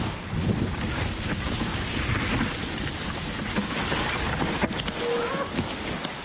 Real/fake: real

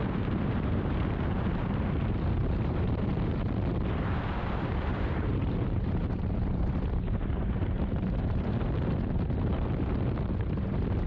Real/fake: fake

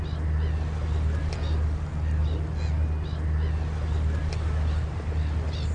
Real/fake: real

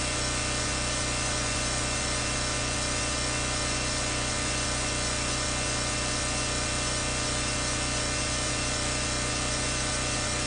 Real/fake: fake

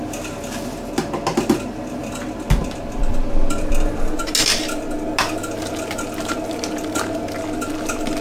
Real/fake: real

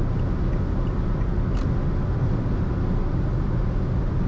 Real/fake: real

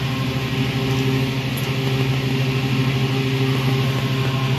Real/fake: real